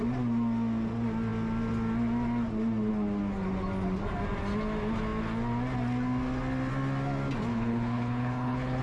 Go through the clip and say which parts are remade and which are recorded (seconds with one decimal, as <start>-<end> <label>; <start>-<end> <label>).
0.0-7.5 recorded; 7.5-8.8 remade